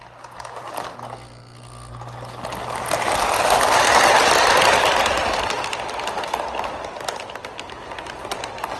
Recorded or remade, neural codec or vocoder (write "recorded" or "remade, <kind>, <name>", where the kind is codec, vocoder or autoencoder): recorded